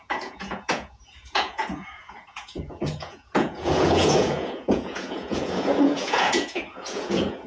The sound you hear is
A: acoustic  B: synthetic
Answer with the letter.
B